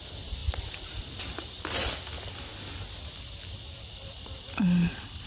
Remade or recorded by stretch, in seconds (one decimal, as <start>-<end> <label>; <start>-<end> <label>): 0.0-5.3 recorded